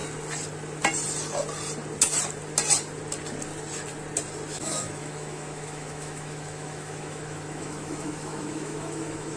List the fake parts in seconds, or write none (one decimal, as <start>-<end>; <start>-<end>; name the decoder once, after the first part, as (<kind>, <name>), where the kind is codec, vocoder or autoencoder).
4.5-9.4 (autoencoder, DAC-VAE)